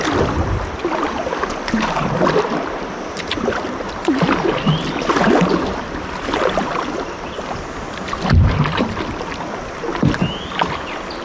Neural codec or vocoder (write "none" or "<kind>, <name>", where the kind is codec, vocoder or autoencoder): none